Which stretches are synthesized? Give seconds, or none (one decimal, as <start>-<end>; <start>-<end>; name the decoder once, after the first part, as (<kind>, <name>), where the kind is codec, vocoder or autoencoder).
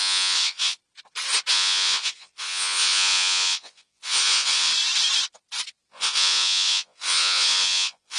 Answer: 0.0-0.8 (vocoder, Vocos); 1.5-4.7; 5.9-8.2